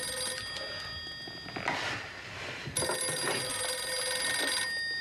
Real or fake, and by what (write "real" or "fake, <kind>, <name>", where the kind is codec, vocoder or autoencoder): real